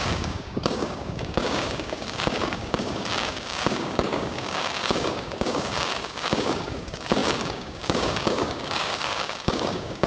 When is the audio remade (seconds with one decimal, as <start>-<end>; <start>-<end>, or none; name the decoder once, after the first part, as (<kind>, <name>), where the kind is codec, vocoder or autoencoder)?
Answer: 0.0-10.1 (codec, DAC)